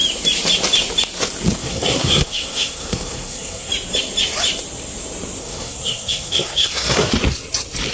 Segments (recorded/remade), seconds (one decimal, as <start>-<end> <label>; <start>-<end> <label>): 0.0-1.6 recorded; 1.6-3.7 remade; 3.7-5.4 recorded; 5.4-7.1 remade; 7.1-7.9 recorded